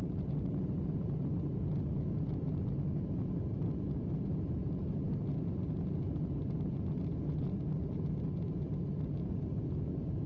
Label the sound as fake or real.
real